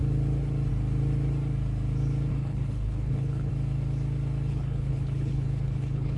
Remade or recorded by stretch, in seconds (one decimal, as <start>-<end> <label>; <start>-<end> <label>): 0.0-2.3 recorded; 2.3-3.5 remade; 3.5-4.5 recorded; 4.5-6.2 remade